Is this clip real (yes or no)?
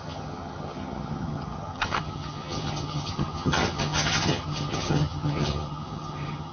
no